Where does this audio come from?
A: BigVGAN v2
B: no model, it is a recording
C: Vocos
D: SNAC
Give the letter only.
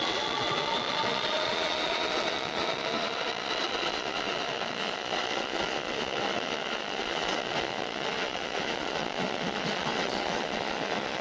C